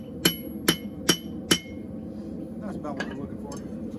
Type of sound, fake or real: real